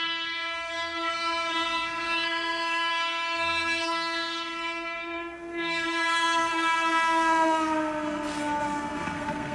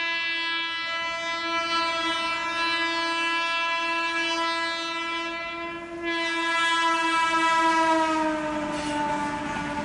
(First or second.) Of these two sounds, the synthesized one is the first